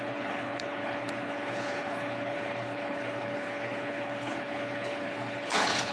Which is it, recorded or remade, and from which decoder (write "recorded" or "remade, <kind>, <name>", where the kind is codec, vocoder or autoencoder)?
remade, codec, HILCodec